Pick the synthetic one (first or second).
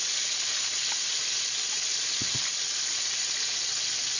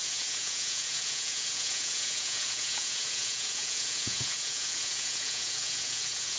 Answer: second